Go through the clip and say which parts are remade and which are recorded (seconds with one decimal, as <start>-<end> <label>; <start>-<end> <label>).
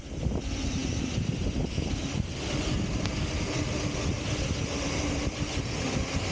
0.0-6.3 recorded